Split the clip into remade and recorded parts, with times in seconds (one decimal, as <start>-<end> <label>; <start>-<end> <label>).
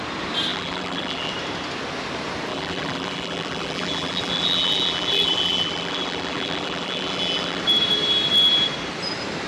0.0-0.5 recorded; 0.5-1.3 remade; 1.3-2.5 recorded; 2.5-7.6 remade; 7.6-9.5 recorded